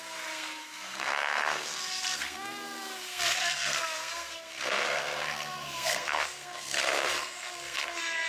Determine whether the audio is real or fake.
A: fake